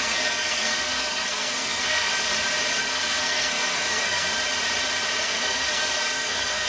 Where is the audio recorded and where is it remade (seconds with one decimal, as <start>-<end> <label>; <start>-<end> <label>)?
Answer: 0.0-2.1 remade; 2.1-2.7 recorded; 2.7-4.3 remade; 4.3-5.2 recorded; 5.2-6.7 remade